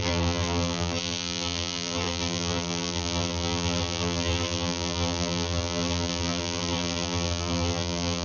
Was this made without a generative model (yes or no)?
no